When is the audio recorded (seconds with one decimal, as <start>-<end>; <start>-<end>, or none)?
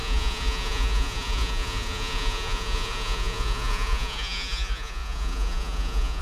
none